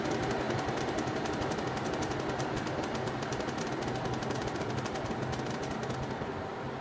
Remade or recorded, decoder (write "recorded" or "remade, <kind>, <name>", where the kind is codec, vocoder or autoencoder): recorded